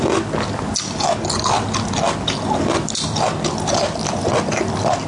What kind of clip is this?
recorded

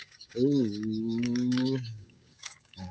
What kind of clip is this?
remade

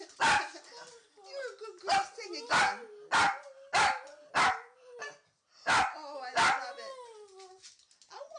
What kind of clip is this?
recorded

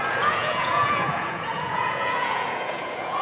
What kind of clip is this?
remade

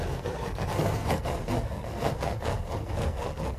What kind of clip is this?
remade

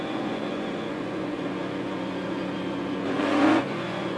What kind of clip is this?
remade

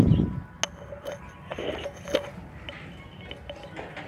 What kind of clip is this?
recorded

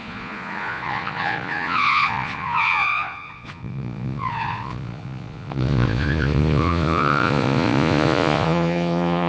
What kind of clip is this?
remade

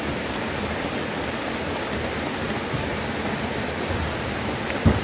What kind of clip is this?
recorded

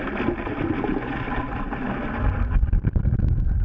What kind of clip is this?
recorded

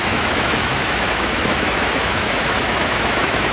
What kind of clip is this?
remade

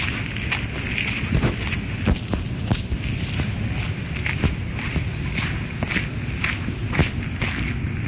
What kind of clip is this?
recorded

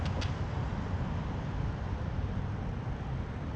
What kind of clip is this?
recorded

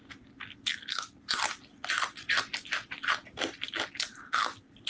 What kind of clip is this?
recorded